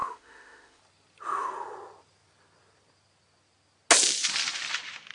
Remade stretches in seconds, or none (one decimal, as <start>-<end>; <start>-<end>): 0.0-0.8